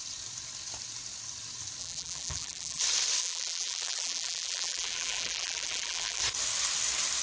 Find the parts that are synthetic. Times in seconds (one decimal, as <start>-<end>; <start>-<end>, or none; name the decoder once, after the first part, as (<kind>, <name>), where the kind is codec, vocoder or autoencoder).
1.8-2.8 (vocoder, BigVGAN v2); 3.2-6.2